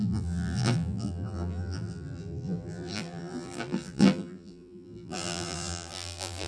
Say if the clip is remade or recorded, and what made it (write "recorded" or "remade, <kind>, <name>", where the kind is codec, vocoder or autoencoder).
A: remade, vocoder, BigVGAN v2